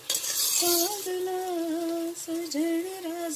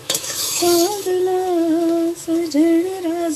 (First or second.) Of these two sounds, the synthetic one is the second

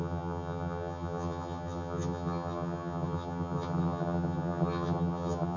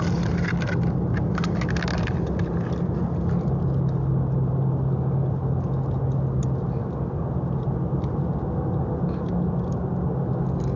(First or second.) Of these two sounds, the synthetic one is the first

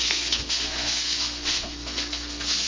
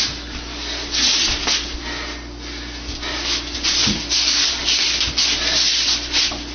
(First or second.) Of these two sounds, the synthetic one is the first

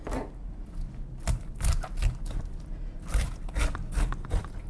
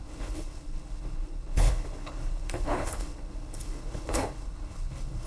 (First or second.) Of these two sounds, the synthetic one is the second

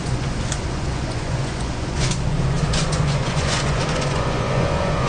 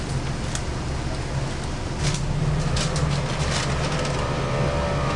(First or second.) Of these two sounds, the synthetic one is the first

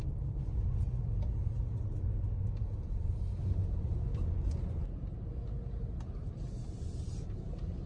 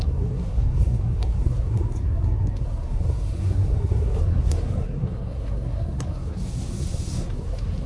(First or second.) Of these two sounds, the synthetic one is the second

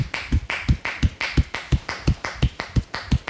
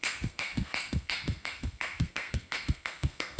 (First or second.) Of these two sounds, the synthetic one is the second